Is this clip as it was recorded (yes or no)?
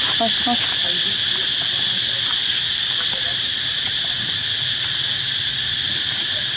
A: yes